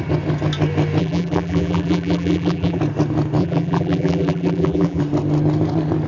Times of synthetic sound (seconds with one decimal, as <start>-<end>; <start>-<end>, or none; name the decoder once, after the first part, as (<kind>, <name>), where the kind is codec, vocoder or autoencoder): 1.0-2.8 (vocoder, BigVGAN v2); 3.4-5.0